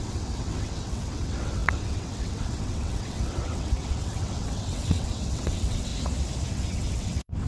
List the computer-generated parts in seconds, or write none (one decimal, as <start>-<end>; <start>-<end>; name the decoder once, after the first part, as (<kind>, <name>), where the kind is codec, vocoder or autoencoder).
0.0-5.9 (vocoder, WaveNeXt); 6.5-7.5